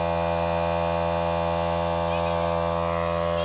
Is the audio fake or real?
real